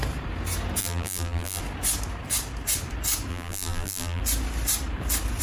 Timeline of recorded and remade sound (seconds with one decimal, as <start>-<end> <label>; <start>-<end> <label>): 0.0-0.8 recorded; 0.8-1.6 remade; 1.6-3.3 recorded; 3.3-4.2 remade; 4.2-5.4 recorded